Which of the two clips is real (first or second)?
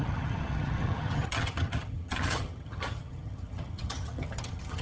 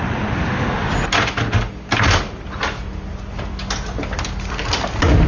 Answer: second